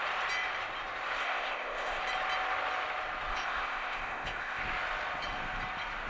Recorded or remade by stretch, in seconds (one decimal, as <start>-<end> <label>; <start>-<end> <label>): 0.0-1.2 recorded; 1.2-2.0 remade; 2.0-3.3 recorded; 3.3-4.6 remade; 4.6-6.1 recorded